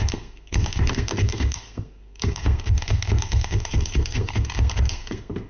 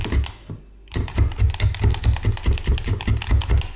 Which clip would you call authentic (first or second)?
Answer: second